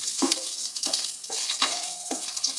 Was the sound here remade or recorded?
remade